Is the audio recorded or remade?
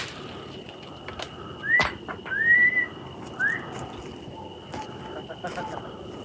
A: recorded